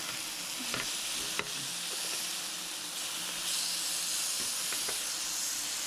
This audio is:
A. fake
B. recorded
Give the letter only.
B